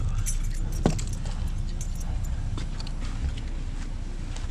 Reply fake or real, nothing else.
real